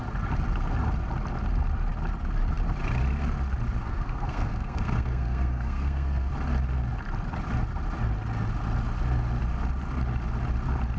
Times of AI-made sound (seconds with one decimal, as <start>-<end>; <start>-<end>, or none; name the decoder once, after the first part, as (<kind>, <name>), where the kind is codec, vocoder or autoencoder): 3.8-6.3 (codec, SNAC)